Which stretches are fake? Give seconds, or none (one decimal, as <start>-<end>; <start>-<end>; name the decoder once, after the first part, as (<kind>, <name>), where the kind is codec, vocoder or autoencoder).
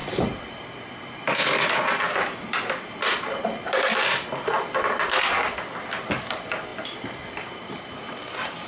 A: 0.0-0.5 (vocoder, BigVGAN v2); 6.7-8.1